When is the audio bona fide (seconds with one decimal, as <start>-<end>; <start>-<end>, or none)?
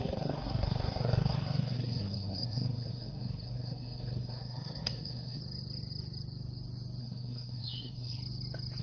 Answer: 5.4-7.0; 8.2-8.8